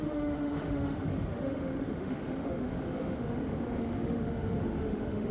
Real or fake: fake